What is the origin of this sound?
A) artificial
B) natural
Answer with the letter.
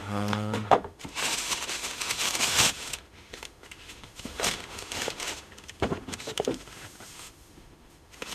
A